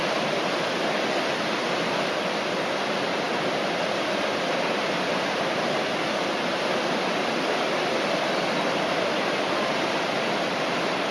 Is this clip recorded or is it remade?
recorded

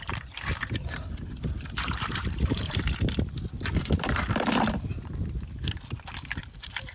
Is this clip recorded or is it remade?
remade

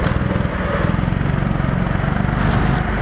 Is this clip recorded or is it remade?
recorded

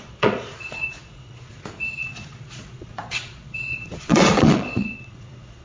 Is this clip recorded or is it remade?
remade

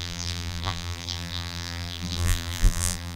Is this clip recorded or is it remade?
remade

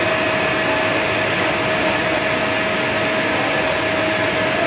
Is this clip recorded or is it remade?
recorded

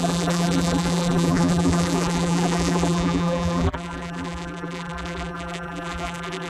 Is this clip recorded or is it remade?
remade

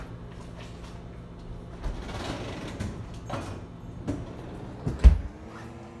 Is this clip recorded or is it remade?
recorded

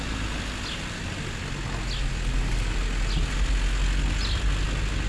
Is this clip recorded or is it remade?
recorded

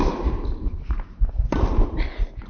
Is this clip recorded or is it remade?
recorded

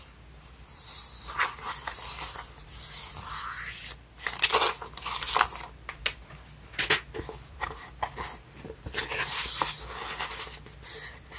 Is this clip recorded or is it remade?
recorded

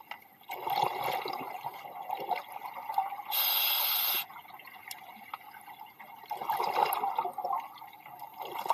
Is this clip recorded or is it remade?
recorded